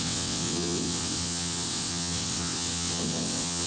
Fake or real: fake